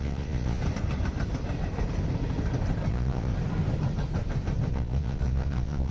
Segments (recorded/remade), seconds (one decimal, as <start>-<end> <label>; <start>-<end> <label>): 0.0-0.6 remade; 0.6-2.9 recorded; 2.9-3.3 remade; 3.3-4.7 recorded; 4.7-5.9 remade